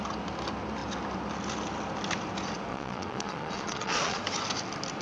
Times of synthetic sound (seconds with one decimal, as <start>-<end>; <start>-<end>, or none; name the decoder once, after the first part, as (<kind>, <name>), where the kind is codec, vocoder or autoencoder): 2.7-4.2 (vocoder, Vocos)